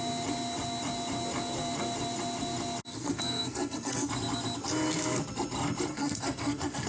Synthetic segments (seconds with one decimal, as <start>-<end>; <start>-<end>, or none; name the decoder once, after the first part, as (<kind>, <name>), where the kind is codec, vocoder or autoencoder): 2.9-4.1 (codec, SNAC); 5.9-6.9